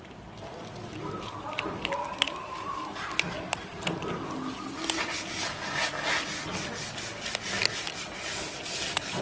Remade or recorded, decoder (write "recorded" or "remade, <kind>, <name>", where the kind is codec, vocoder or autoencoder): recorded